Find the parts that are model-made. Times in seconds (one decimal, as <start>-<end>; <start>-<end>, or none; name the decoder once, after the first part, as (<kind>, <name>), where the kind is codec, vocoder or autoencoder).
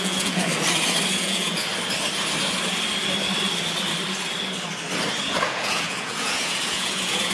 0.0-0.5 (vocoder, Vocos); 1.1-1.7; 5.2-7.3